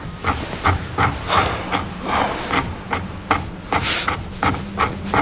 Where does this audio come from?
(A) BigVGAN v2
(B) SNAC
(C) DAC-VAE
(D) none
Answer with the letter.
D